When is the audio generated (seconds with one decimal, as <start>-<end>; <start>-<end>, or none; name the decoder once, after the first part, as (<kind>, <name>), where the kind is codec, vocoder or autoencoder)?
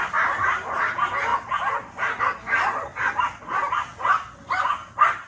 none